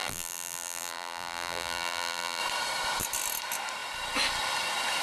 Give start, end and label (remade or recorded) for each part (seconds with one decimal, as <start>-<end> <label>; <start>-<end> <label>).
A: 0.0-2.4 remade; 2.4-5.0 recorded